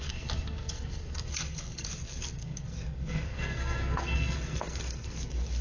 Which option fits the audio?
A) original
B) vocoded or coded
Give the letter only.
B